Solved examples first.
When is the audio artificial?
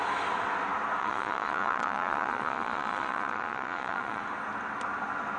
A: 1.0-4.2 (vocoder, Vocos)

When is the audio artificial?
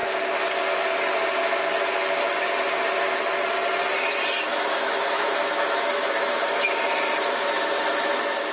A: 4.5-6.7 (autoencoder, DAC-VAE)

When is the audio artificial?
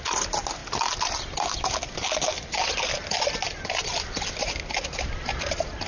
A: none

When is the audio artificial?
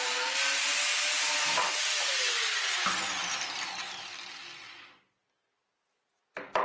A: none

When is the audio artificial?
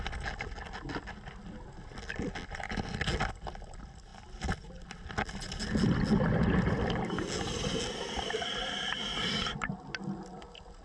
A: none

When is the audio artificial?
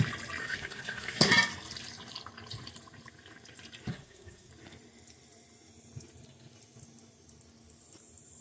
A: 0.4-1.3 (codec, SNAC); 3.9-4.5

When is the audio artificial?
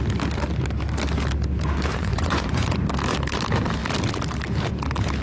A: 1.9-2.8 (vocoder, Vocos)